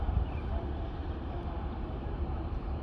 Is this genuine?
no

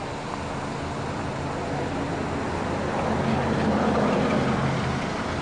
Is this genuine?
yes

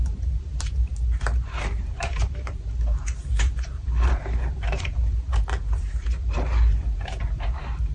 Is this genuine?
no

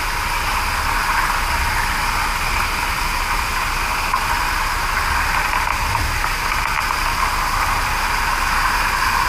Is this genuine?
yes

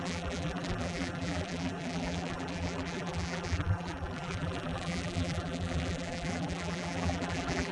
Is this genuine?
no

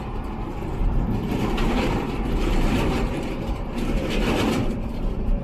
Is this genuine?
no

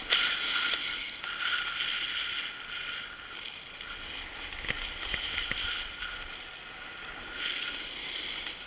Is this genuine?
yes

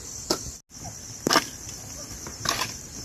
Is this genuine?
yes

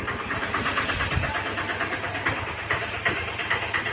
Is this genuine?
no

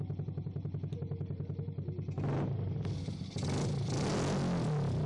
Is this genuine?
yes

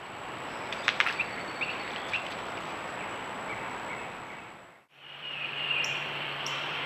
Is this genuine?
no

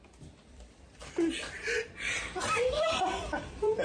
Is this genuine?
no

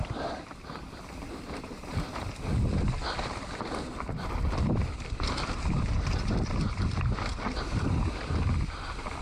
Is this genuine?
no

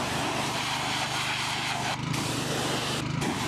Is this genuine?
no